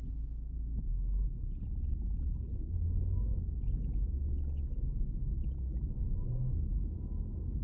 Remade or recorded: recorded